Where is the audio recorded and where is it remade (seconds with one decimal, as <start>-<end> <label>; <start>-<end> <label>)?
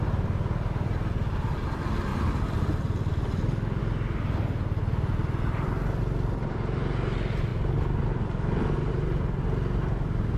0.0-10.4 recorded